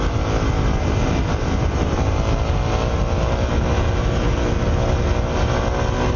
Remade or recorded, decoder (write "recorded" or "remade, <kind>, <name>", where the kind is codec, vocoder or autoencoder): recorded